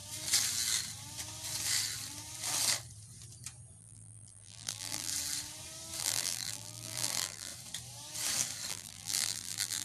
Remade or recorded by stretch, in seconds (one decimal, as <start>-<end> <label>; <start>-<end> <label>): 0.0-3.8 recorded; 3.8-5.1 remade; 5.1-6.0 recorded; 6.0-7.5 remade; 7.5-8.7 recorded; 8.7-9.8 remade